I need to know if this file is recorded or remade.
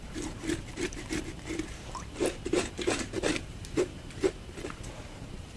remade